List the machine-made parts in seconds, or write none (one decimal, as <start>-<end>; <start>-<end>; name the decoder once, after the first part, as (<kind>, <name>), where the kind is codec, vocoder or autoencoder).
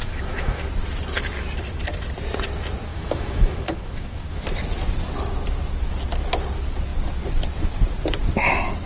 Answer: 0.0-0.6 (autoencoder, DAC-VAE); 2.9-4.4